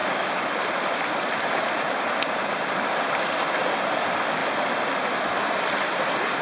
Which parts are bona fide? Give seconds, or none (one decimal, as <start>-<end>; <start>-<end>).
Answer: 0.6-6.4

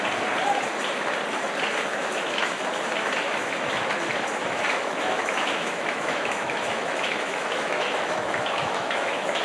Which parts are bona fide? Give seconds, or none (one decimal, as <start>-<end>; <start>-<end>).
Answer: 0.0-1.9; 2.6-4.4